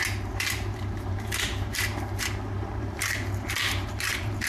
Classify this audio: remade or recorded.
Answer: remade